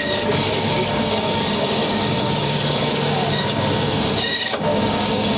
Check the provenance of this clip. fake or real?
fake